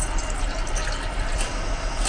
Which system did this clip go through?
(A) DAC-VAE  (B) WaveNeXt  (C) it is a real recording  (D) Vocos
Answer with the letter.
C